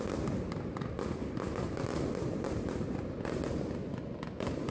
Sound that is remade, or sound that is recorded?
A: recorded